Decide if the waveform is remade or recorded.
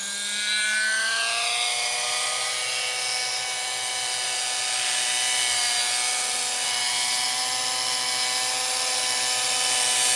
recorded